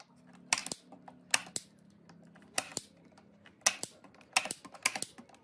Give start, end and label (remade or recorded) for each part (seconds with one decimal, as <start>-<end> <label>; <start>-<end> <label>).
0.0-5.4 recorded